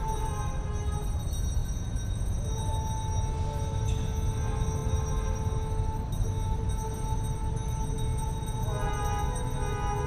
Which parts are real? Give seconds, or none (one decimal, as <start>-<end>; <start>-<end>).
0.0-1.6; 2.6-8.1; 9.0-10.1